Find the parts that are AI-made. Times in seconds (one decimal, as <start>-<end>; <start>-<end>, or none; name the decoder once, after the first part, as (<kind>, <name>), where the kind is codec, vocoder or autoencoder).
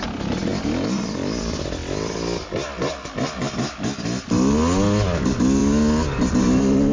none